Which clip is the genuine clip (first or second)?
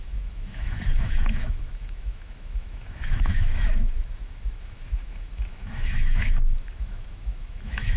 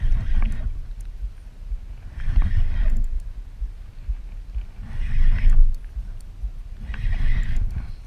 second